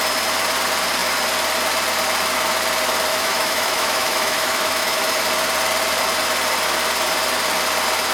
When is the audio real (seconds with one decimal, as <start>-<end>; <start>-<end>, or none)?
0.0-3.1; 5.3-8.1